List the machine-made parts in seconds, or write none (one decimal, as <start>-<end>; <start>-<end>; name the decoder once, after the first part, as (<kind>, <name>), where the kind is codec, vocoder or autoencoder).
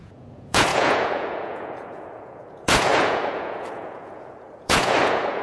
0.0-5.4 (vocoder, Vocos)